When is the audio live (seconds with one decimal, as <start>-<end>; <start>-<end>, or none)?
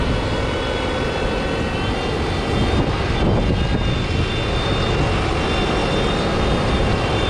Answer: 0.0-5.8